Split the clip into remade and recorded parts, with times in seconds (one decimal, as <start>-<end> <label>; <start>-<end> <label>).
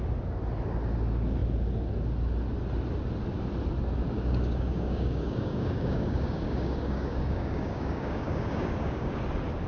0.0-4.0 recorded; 4.0-9.2 remade; 9.2-9.7 recorded